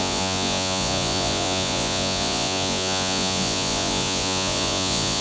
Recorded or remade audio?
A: remade